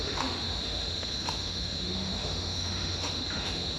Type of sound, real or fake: fake